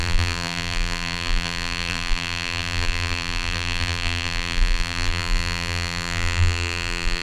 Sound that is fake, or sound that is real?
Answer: fake